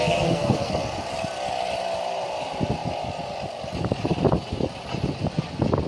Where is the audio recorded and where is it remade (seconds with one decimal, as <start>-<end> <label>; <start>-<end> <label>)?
0.0-0.7 remade; 0.7-5.9 recorded